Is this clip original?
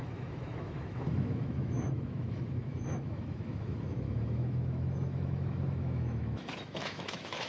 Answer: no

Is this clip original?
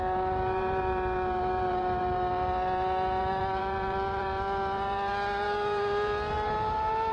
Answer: no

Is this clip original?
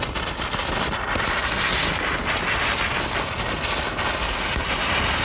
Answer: yes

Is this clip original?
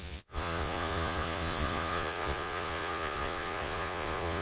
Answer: no